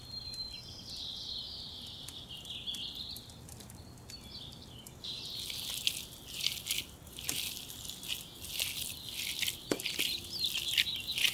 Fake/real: real